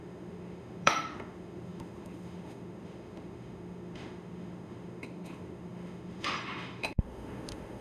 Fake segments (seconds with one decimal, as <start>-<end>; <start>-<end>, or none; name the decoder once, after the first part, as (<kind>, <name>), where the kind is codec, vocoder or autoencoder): 0.0-7.8 (autoencoder, DAC-VAE)